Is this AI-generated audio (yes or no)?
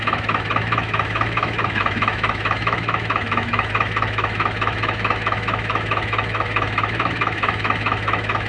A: yes